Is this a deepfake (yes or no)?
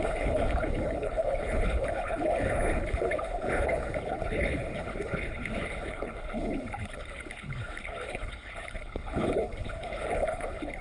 yes